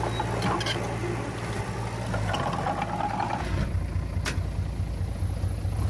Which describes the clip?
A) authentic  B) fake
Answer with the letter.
A